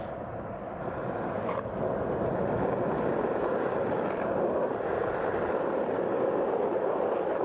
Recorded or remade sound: recorded